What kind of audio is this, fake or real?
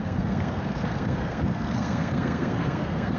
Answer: fake